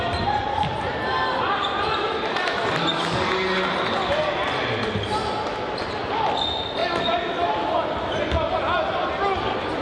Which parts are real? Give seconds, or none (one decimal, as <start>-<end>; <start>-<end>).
0.0-9.8